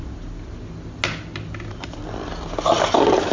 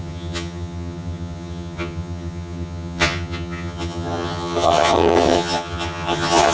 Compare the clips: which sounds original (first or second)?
first